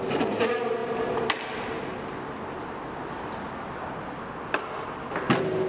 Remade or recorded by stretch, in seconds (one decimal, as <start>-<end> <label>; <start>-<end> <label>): 0.0-5.7 recorded